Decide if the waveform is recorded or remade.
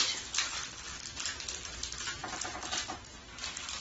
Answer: recorded